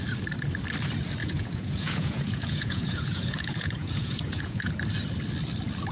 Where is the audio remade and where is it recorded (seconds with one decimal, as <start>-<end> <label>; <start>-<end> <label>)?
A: 0.0-1.2 recorded; 1.2-4.7 remade; 4.7-5.9 recorded

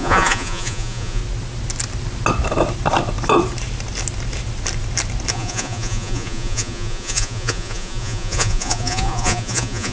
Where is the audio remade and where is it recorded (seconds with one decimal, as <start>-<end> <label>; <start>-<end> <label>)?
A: 0.0-1.2 remade; 1.2-5.3 recorded; 5.3-9.9 remade

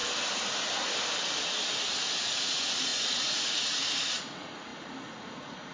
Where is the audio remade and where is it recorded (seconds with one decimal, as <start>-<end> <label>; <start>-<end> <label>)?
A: 0.0-2.2 recorded; 2.2-5.7 remade

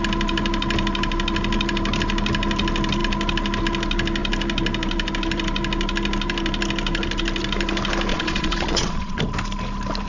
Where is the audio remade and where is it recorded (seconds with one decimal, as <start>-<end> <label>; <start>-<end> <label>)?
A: 0.0-8.1 recorded; 8.1-9.2 remade; 9.2-10.1 recorded

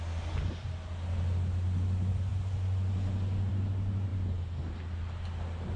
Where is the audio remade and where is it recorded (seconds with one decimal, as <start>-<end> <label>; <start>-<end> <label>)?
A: 0.0-5.8 recorded

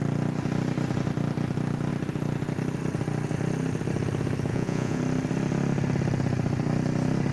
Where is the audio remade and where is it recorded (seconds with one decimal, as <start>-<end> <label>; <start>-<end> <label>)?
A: 0.0-4.5 recorded; 4.5-5.0 remade; 5.0-7.3 recorded

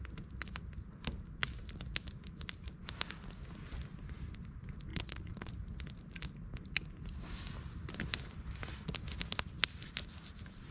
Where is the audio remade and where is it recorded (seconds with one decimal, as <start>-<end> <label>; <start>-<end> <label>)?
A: 0.0-4.9 recorded; 4.9-5.5 remade; 5.5-10.7 recorded